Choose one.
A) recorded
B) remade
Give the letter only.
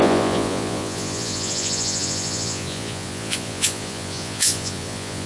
B